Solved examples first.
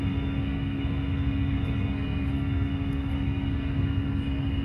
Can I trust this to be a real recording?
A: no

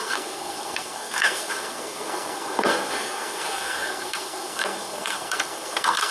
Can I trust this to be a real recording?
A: no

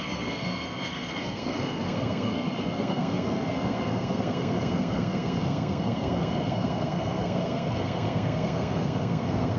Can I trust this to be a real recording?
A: no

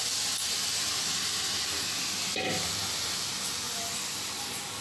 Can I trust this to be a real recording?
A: yes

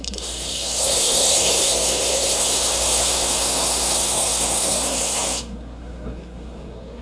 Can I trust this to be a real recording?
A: no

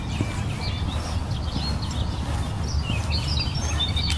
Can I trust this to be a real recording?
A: yes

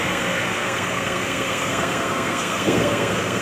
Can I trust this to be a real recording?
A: no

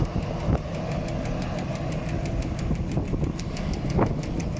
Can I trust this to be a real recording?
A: yes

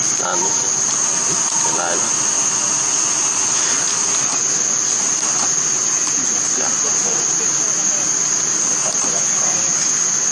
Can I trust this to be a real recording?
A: yes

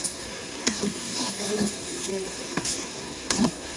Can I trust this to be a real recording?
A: no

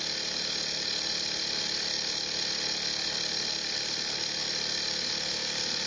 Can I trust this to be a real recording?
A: yes